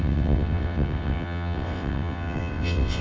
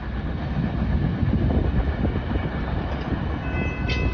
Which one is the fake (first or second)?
first